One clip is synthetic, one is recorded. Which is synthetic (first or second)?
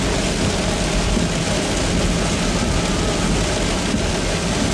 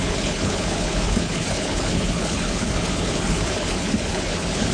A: second